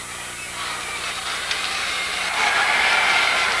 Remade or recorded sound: recorded